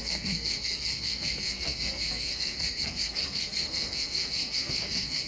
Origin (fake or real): fake